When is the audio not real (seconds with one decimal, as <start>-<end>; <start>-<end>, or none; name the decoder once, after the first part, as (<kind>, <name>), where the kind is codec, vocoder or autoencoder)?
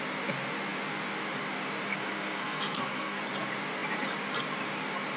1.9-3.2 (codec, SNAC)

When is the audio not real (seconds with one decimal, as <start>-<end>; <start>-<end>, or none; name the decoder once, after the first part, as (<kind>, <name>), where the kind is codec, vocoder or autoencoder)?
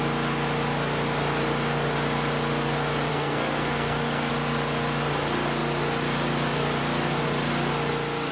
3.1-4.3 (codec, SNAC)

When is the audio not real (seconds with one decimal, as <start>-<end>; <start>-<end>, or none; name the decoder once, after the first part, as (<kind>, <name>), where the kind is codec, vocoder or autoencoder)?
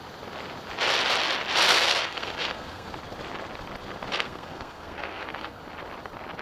1.7-2.9 (codec, SNAC); 4.1-5.6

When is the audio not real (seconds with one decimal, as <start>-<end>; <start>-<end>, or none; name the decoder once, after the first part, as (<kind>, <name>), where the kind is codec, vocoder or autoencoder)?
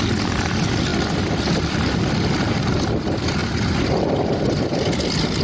none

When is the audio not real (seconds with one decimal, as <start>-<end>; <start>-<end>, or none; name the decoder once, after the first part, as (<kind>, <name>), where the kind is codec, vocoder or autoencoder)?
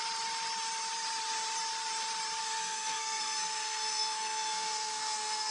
2.4-5.5 (codec, SNAC)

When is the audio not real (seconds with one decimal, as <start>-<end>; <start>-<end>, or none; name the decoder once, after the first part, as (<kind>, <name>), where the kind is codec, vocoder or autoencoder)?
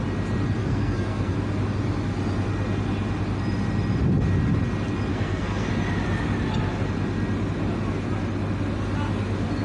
0.6-1.3 (codec, SNAC); 5.1-5.7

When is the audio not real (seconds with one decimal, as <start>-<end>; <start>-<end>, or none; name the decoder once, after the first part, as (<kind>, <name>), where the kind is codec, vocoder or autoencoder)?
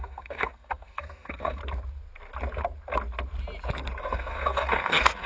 0.0-1.6 (codec, SNAC); 4.0-5.3